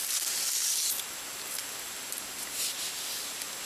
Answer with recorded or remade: recorded